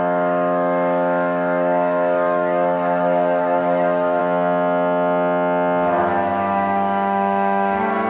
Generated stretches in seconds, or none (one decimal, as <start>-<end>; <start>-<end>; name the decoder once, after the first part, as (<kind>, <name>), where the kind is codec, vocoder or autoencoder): 0.0-4.2 (autoencoder, DAC-VAE); 6.0-8.1